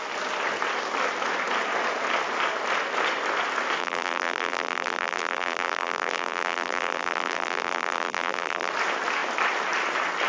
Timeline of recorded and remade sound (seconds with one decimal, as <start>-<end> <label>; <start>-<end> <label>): 0.0-3.8 recorded; 3.8-8.7 remade; 8.7-10.3 recorded